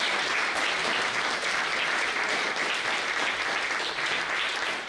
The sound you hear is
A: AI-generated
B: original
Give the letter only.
B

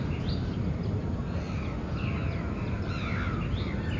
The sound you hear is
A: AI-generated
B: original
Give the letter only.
B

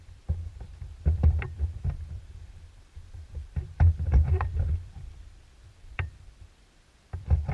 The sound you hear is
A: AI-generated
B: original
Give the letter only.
A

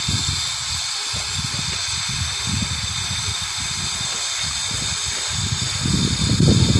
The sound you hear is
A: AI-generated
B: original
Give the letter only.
B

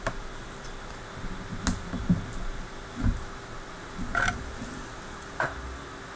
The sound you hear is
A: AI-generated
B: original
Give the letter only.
B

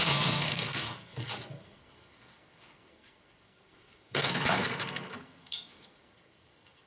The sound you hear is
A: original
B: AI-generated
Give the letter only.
B